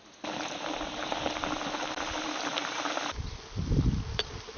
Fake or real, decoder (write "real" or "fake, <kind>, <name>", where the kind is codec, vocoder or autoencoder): real